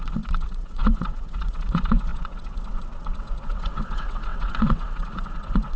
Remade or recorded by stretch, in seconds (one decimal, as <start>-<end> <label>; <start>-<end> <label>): 0.0-5.8 remade